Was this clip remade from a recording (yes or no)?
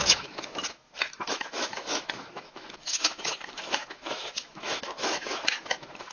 yes